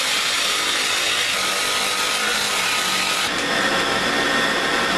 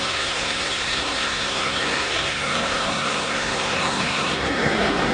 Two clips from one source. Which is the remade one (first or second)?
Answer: second